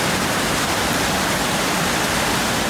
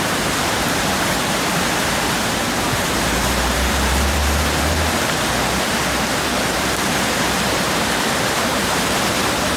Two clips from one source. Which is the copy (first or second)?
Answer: second